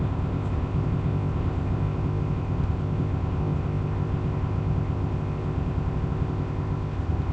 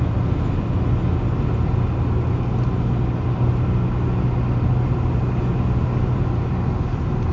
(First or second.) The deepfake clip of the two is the first